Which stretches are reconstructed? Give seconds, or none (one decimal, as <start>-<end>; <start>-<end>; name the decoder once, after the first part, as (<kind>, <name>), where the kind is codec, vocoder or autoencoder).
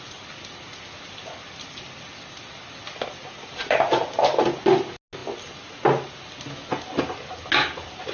none